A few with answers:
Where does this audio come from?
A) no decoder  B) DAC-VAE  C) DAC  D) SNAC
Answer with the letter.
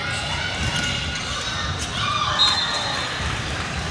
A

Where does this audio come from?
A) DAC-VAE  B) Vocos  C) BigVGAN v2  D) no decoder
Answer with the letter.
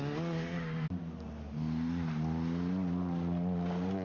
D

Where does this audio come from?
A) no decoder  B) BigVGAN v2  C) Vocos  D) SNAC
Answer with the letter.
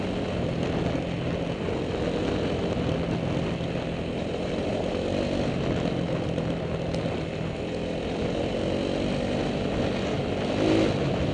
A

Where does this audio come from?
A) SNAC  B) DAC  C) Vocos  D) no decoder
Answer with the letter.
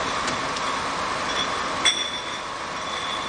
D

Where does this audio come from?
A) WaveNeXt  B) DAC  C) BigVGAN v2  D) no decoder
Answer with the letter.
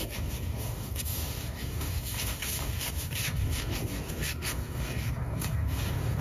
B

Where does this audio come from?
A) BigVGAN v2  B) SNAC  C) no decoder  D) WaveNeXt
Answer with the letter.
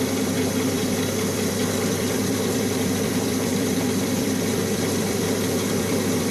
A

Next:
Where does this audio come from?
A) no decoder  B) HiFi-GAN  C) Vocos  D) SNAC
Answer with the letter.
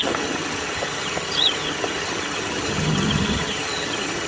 B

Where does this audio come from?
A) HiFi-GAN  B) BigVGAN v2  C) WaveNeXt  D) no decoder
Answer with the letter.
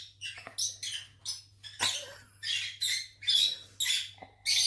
D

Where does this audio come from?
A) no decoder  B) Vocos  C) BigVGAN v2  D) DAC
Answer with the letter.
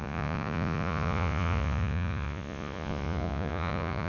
B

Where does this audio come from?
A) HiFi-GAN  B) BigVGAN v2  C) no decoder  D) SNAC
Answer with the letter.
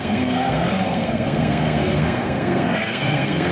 D